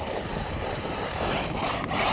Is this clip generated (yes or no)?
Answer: no